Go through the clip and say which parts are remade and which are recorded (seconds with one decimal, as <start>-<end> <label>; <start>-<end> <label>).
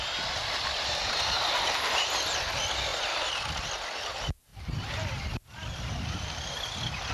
0.0-1.0 recorded; 1.0-2.2 remade; 2.2-2.9 recorded; 2.9-3.4 remade; 3.4-4.5 recorded; 4.5-5.3 remade; 5.3-7.1 recorded